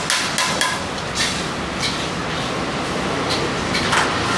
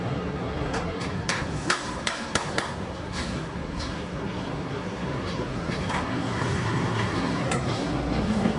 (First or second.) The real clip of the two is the first